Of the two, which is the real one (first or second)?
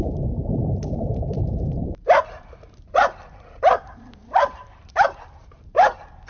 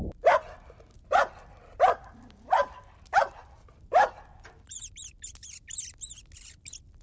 second